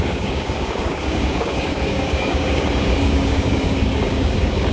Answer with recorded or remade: remade